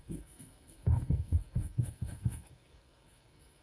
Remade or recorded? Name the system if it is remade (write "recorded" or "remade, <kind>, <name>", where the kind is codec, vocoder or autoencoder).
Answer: remade, codec, SNAC